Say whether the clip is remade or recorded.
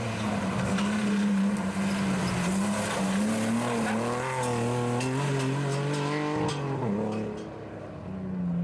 recorded